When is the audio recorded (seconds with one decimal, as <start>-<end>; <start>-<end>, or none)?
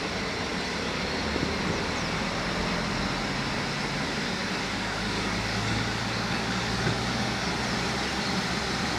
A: 0.0-4.4; 7.5-9.0